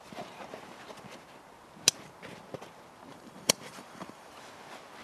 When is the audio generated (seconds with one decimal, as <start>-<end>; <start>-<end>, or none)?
3.1-4.3